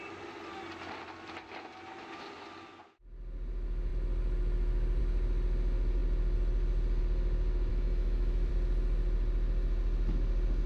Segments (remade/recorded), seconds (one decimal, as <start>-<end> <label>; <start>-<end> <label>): 0.0-7.7 recorded; 7.7-8.5 remade; 8.5-10.7 recorded